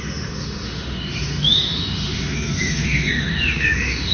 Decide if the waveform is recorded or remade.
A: remade